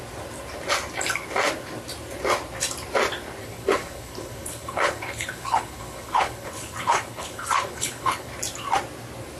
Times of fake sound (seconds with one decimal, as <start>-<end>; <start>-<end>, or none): 3.4-8.3